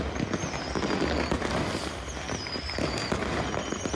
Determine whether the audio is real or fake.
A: real